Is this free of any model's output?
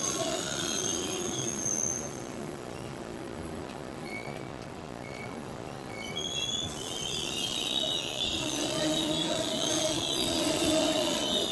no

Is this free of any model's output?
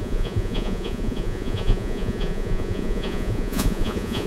no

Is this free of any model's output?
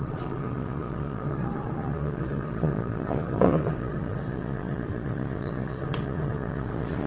no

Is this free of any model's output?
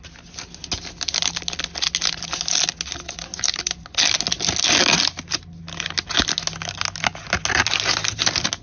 yes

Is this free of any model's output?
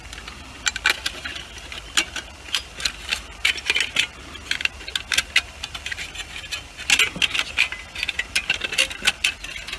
yes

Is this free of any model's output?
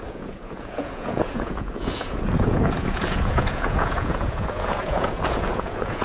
no